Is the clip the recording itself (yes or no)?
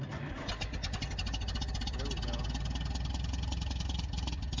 yes